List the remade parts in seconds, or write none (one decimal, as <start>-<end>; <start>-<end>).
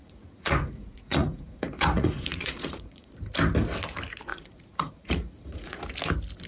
0.0-3.1; 4.3-5.8